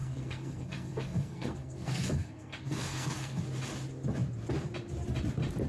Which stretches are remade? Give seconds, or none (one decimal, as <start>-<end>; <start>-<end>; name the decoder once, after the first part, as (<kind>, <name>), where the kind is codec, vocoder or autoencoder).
0.0-3.4 (codec, SNAC)